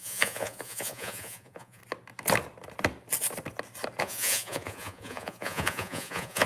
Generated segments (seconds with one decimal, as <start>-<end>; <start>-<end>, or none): 0.0-1.8; 4.0-6.5